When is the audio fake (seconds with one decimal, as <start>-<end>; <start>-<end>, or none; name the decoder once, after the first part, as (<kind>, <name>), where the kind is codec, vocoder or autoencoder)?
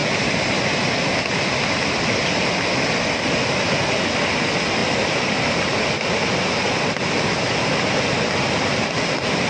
none